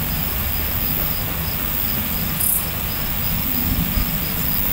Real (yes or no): yes